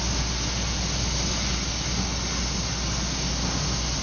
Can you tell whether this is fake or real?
real